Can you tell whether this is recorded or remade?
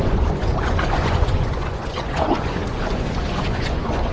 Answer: remade